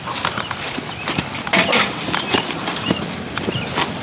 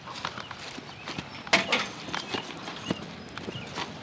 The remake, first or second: first